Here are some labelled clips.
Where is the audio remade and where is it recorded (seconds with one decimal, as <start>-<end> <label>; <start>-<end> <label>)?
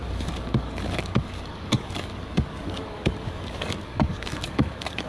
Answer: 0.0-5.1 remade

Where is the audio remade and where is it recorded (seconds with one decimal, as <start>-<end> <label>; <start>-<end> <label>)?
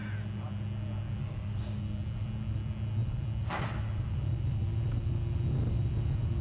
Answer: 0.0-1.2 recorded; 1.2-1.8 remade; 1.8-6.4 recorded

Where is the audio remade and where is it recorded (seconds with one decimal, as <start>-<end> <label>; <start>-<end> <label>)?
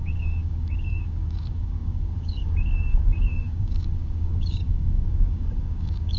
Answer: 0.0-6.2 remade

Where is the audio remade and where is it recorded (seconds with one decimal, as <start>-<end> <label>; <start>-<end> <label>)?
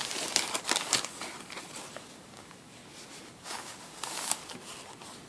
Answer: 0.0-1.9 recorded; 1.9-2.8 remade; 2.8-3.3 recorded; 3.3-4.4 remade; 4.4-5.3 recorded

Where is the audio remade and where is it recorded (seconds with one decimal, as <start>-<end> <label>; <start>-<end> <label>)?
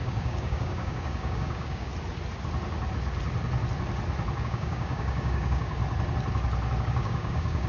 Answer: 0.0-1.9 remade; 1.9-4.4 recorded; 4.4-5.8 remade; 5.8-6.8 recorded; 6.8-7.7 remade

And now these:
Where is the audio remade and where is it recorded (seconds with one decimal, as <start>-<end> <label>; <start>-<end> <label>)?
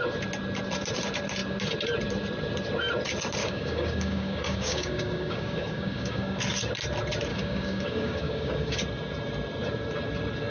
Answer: 0.0-3.4 recorded; 3.4-6.4 remade; 6.4-7.3 recorded; 7.3-8.8 remade; 8.8-10.5 recorded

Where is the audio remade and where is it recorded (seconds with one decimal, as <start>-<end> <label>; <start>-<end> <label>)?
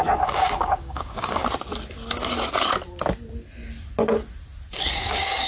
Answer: 0.0-1.4 remade; 1.4-4.7 recorded; 4.7-5.5 remade